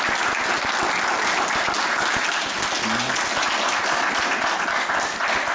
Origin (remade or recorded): recorded